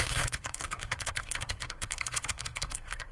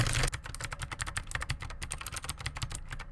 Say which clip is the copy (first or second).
first